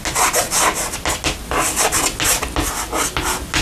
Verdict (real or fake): real